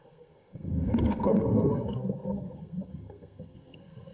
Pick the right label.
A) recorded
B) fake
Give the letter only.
B